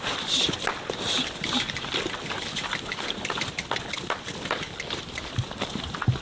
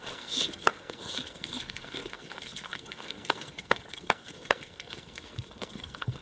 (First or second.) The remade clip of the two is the second